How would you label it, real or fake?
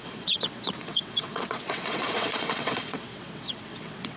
fake